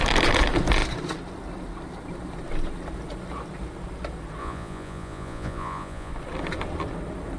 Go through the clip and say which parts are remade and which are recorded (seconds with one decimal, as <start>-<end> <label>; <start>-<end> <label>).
0.0-4.4 recorded; 4.4-6.1 remade; 6.1-7.4 recorded